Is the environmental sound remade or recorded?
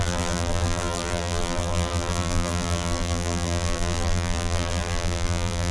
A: remade